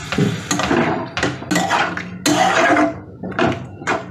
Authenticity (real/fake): real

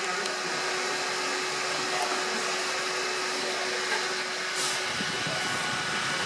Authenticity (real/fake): real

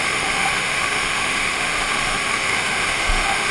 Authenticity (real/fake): fake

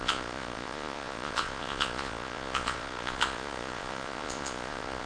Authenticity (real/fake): fake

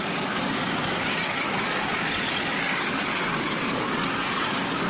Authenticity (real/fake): fake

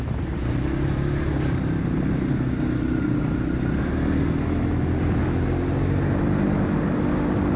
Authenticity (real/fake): real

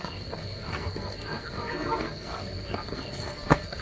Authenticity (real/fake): fake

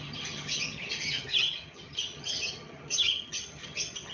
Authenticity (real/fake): fake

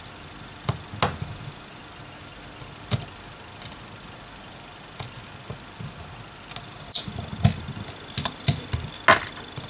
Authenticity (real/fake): real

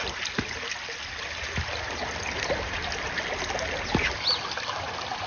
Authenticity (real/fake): real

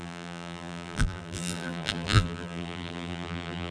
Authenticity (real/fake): fake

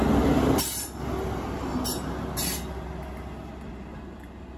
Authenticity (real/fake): real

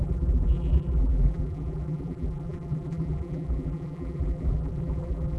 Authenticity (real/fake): fake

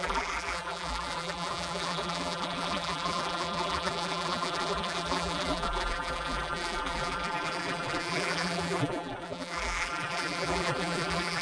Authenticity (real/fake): fake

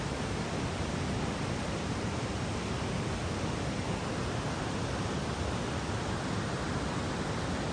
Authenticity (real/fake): real